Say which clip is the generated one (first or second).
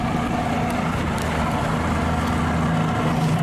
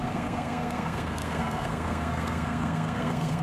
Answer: second